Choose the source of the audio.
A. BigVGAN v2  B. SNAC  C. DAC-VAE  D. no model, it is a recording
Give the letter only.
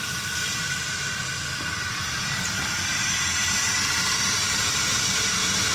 A